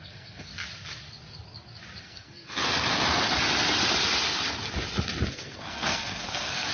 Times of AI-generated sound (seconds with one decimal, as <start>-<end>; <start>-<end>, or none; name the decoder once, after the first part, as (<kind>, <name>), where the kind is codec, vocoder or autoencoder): 0.0-0.5 (codec, SNAC); 2.0-2.6; 5.3-6.7